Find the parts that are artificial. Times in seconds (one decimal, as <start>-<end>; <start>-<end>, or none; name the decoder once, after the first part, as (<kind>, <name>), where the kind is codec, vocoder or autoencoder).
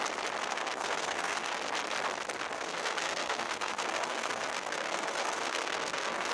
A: 0.4-1.6 (codec, SNAC); 2.5-6.3